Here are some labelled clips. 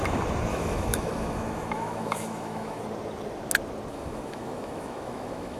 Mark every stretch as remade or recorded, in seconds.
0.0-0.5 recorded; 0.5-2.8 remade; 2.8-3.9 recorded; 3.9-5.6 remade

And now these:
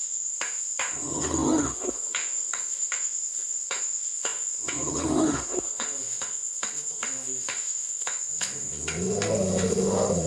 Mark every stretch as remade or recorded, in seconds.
0.0-10.3 remade

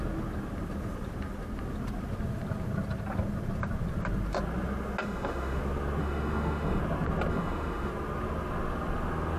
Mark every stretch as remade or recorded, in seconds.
0.0-5.0 recorded; 5.0-5.6 remade; 5.6-6.0 recorded; 6.0-6.8 remade; 6.8-7.3 recorded; 7.3-7.9 remade; 7.9-9.4 recorded

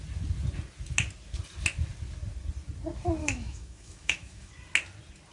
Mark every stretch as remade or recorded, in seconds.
0.0-3.2 recorded; 3.2-4.5 remade; 4.5-5.3 recorded

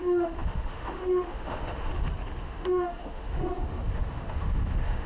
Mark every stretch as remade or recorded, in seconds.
0.0-1.9 remade; 1.9-2.4 recorded; 2.4-5.1 remade

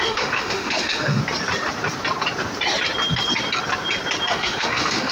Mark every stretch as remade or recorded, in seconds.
0.0-1.2 remade; 1.2-4.3 recorded; 4.3-5.1 remade